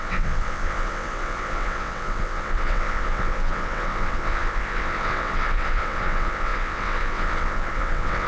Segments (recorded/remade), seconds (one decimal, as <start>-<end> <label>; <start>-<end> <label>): 0.0-8.3 remade